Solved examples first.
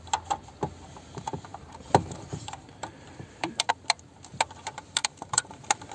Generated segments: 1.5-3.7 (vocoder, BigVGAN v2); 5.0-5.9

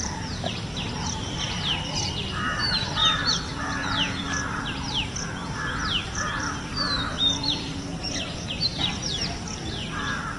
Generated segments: 0.0-10.4 (vocoder, BigVGAN v2)